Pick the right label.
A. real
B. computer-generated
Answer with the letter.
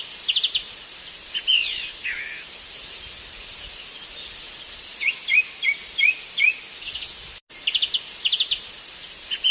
A